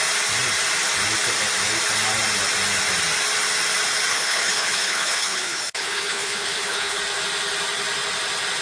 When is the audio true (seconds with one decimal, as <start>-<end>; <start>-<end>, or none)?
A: 0.0-4.1; 7.0-8.6